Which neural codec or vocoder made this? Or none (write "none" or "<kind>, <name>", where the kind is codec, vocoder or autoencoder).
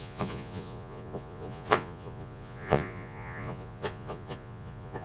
vocoder, Vocos